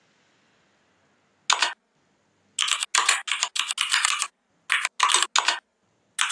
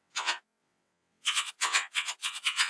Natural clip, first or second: first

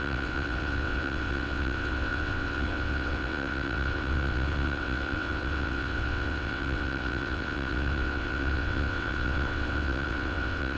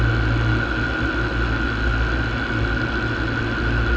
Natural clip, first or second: second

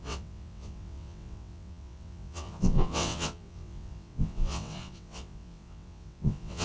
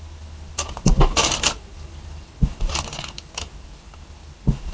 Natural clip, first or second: second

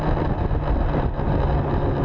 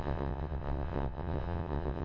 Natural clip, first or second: first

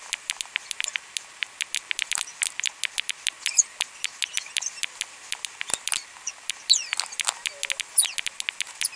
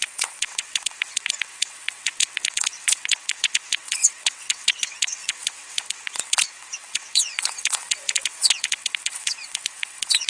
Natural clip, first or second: first